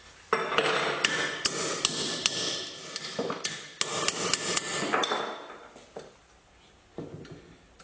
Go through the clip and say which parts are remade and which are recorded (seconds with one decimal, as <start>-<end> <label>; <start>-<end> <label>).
0.0-7.8 recorded